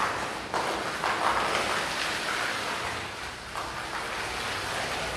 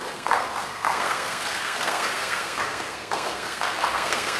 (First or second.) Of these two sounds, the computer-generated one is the second